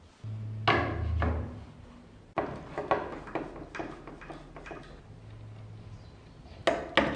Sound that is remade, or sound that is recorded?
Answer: recorded